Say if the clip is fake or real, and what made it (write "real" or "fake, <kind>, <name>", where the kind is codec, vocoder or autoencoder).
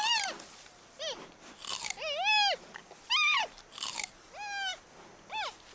real